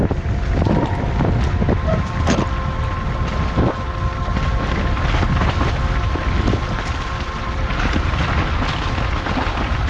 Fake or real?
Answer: real